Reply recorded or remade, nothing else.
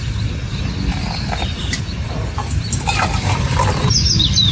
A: recorded